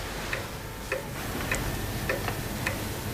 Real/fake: real